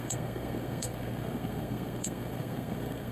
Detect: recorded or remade remade